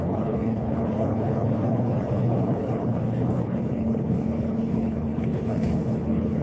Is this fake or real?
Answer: fake